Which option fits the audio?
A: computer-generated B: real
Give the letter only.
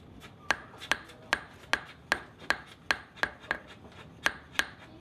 B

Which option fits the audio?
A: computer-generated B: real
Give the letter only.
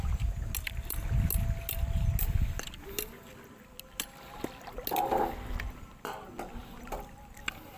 B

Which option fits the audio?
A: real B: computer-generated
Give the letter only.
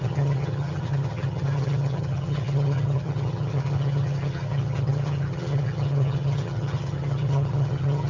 B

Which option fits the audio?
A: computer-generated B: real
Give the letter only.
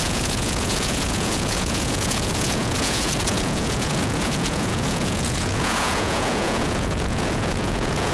A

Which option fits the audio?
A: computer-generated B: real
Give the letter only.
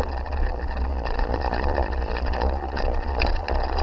A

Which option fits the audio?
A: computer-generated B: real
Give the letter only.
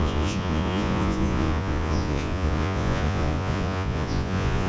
A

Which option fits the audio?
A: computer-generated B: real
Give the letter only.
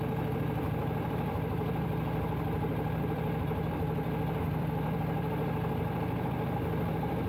B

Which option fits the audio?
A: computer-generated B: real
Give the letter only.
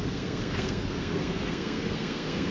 A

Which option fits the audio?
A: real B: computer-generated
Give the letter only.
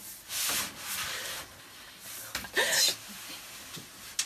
A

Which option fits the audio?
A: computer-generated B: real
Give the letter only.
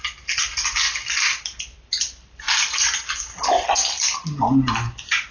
B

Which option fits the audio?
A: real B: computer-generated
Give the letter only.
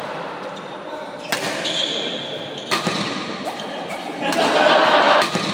A